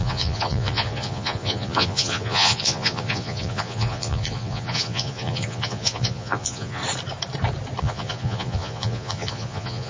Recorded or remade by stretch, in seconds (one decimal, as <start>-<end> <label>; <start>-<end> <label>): 0.0-6.8 remade; 6.8-7.8 recorded; 7.8-9.9 remade